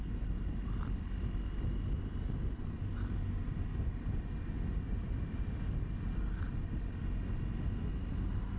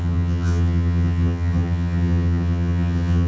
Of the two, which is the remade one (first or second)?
second